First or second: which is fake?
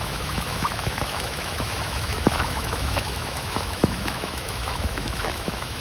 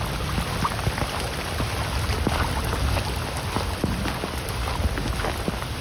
first